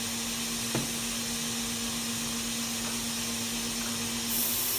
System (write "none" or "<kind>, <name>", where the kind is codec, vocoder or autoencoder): none